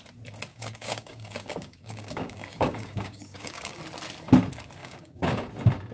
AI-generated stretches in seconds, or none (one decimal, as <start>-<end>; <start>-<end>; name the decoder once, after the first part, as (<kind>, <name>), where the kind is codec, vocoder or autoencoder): 0.5-3.8 (codec, DAC); 4.8-5.5